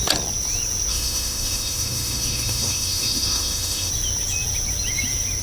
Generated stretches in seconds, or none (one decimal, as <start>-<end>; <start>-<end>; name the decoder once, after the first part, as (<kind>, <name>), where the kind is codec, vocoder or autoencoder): 0.9-3.9 (autoencoder, DAC-VAE)